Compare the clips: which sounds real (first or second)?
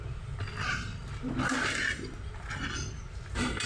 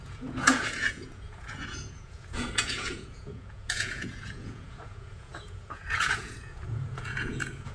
first